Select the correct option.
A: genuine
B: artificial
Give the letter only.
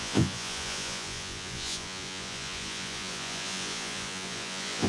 B